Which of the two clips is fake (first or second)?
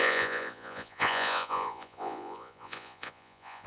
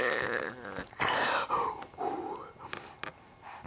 first